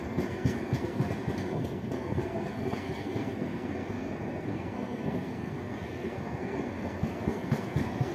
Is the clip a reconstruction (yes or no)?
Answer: yes